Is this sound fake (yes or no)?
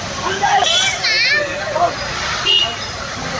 no